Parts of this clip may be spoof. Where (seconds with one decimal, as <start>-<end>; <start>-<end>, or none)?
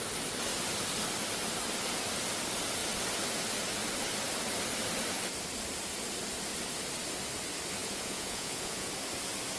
7.8-8.9